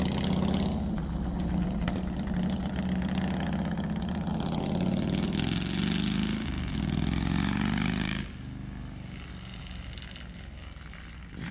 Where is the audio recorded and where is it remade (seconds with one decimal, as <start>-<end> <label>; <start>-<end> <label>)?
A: 0.0-11.5 recorded